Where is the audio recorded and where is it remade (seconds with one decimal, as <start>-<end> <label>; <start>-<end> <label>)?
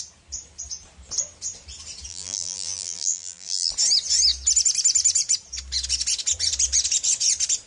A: 0.0-2.1 recorded; 2.1-3.7 remade; 3.7-7.7 recorded